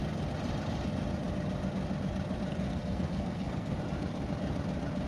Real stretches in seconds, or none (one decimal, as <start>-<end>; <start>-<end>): 0.0-2.5; 3.8-5.1